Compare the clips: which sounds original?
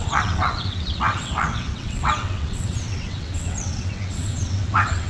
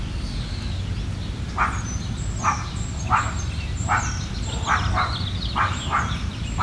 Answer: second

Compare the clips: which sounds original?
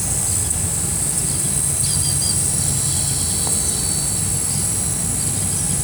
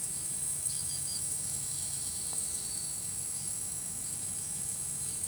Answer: first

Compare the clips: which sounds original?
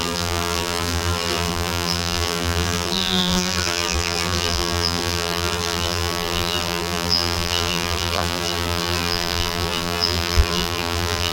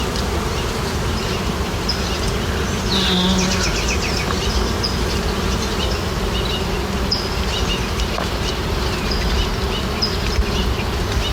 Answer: second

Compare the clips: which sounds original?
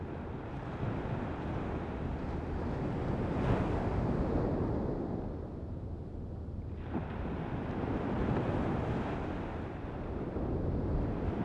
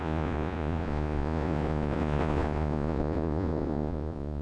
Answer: first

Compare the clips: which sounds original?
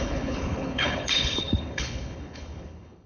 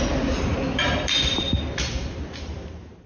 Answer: second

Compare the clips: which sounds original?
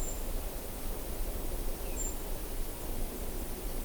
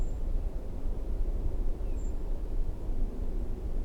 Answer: first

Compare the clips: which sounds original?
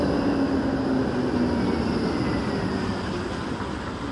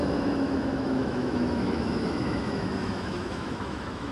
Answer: first